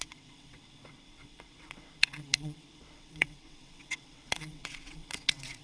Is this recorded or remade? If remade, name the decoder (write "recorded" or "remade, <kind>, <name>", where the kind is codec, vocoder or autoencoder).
remade, vocoder, WaveNeXt